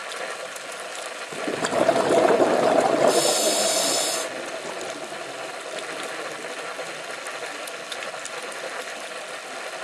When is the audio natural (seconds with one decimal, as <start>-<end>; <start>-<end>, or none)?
0.0-9.8